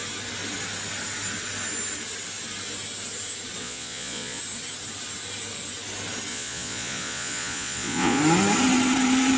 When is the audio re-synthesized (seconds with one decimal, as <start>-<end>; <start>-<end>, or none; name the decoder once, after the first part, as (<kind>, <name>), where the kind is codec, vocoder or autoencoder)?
3.6-4.4 (vocoder, Vocos); 6.3-8.2